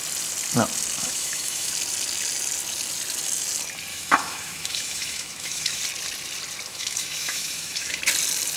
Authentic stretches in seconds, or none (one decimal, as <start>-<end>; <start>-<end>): 0.0-1.0; 1.7-3.9; 5.8-6.7; 8.0-8.6